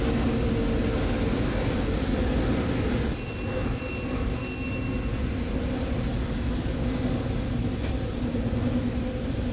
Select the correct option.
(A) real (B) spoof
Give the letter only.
A